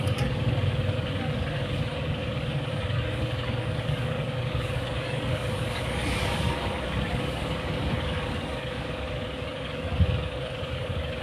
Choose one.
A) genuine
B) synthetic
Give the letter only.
B